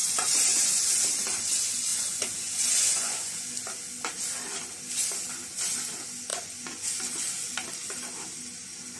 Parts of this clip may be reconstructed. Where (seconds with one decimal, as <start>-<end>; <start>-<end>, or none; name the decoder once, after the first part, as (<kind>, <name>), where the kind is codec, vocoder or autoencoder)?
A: 0.0-0.7 (vocoder, Vocos); 1.9-3.4; 6.3-6.9